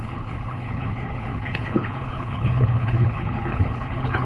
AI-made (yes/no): yes